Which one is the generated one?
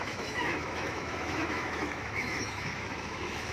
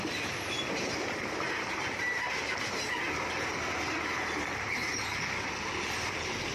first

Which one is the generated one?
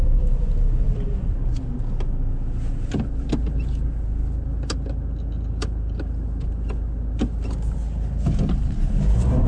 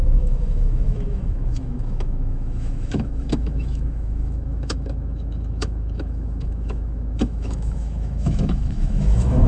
second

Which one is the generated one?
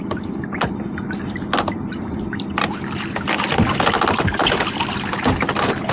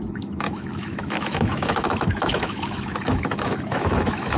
second